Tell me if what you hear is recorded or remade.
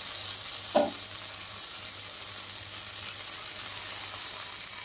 recorded